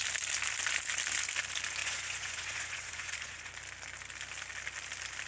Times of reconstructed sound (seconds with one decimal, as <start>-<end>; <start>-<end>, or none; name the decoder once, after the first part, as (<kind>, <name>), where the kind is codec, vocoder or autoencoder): 1.8-3.5 (vocoder, Vocos)